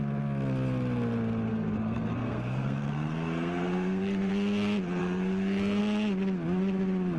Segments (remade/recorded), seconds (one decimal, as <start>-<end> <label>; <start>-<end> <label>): 0.0-1.5 recorded; 1.5-4.3 remade; 4.3-5.0 recorded; 5.0-5.8 remade; 5.8-7.2 recorded